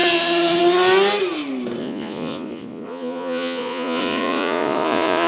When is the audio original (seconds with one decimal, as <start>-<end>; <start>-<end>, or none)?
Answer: 0.0-1.8